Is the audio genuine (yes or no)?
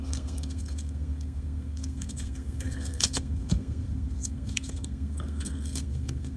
no